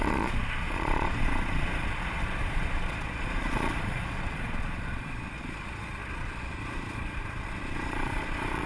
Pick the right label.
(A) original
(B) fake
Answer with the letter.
B